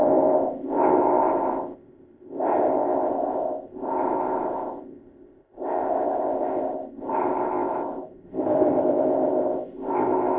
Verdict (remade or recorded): remade